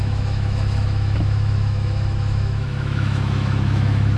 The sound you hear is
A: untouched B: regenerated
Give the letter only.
B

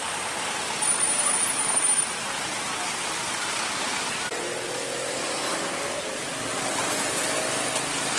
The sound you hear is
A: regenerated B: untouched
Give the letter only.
B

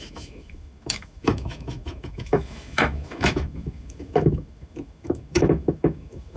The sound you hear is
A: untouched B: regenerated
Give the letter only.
B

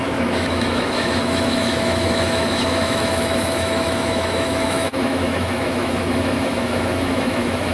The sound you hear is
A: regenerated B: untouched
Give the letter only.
A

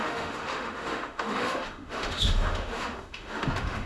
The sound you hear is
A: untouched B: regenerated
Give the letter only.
B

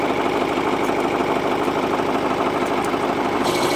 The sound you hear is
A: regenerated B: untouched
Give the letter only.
B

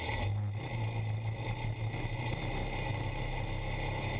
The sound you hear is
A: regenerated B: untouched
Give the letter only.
B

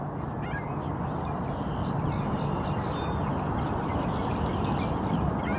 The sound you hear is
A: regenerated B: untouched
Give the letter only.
B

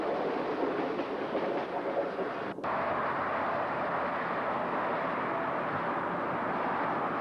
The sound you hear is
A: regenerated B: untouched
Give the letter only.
B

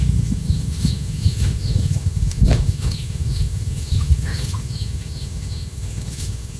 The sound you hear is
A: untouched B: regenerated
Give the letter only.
B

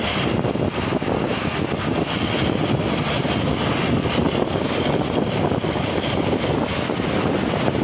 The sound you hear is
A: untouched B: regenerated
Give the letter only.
A